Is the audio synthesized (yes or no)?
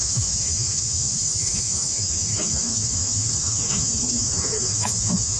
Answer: yes